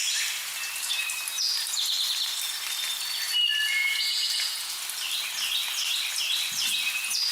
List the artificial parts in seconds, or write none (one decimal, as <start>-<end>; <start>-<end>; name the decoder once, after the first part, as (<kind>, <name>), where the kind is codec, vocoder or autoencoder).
3.8-4.8 (vocoder, Vocos)